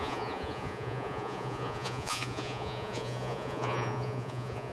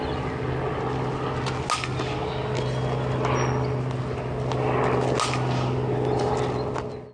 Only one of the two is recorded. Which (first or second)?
second